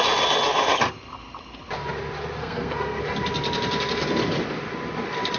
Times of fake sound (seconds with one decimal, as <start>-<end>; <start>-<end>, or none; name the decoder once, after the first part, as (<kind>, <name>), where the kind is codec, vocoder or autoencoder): 2.4-3.0 (codec, SNAC)